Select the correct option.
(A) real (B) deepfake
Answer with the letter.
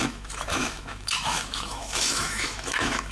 B